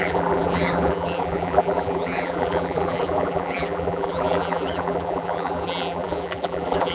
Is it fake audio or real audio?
fake